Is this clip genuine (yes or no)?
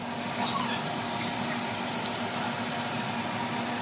yes